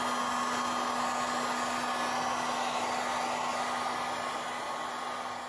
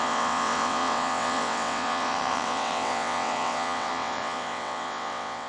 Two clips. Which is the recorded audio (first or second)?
first